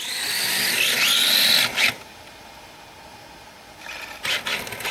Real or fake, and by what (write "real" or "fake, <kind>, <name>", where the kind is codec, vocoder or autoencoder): real